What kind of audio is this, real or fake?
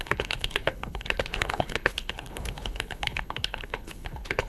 fake